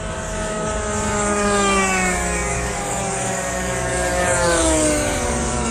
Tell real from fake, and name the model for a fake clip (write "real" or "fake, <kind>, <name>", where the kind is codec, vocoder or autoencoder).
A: fake, codec, DAC